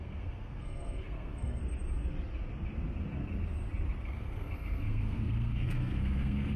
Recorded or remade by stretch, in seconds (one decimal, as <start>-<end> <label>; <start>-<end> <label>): 0.0-1.6 remade; 1.6-4.0 recorded; 4.0-6.6 remade